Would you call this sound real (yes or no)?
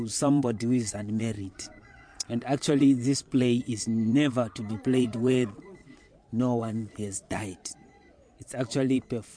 no